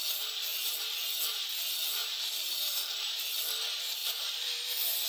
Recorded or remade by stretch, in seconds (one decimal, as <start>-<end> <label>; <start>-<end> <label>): 0.0-2.0 recorded; 2.0-3.2 remade; 3.2-4.0 recorded; 4.0-5.1 remade